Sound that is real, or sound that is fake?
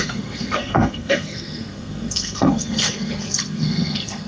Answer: fake